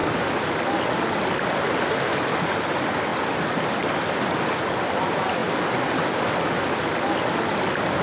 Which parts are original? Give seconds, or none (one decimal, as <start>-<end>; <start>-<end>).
0.0-8.0